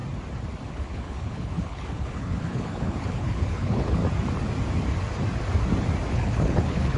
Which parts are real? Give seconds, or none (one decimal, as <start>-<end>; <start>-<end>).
0.0-0.7; 4.0-6.1